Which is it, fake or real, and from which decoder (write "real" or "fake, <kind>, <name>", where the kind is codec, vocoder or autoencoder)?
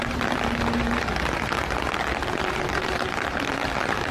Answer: fake, vocoder, BigVGAN v2